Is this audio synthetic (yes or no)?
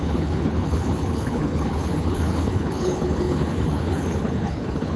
yes